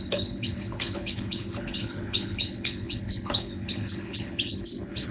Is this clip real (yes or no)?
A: no